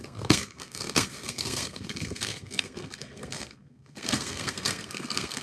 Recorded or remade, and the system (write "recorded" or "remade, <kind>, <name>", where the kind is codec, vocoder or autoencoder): remade, codec, SNAC